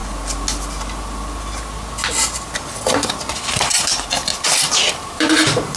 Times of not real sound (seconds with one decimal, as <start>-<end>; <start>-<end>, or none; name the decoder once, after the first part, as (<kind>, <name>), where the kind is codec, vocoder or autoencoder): 3.5-3.9 (vocoder, BigVGAN v2); 4.9-5.8